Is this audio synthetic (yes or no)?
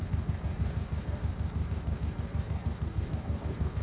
yes